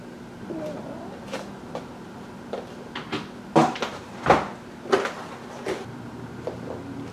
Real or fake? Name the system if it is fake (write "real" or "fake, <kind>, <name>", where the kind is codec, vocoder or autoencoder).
real